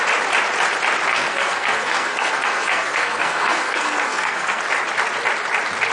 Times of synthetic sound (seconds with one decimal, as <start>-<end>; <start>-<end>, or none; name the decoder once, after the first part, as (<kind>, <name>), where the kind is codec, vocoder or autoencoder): 1.1-4.6 (codec, SNAC)